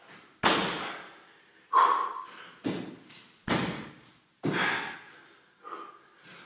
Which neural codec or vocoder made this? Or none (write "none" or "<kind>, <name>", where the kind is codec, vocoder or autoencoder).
none